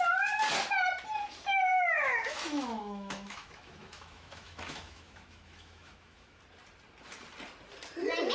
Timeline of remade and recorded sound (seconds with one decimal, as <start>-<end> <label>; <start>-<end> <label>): 0.0-1.7 recorded; 1.7-6.4 remade; 6.4-8.3 recorded